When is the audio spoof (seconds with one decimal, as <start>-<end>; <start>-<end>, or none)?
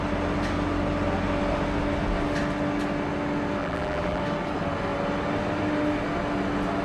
3.6-4.2